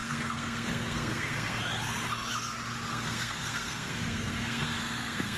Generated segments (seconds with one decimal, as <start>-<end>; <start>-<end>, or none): 0.0-1.6; 2.9-5.4